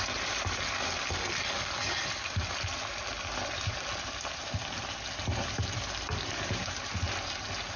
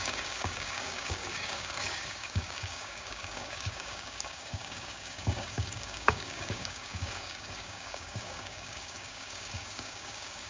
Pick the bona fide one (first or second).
first